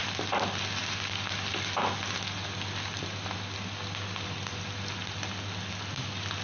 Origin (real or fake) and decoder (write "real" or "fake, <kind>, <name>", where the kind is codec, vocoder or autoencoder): real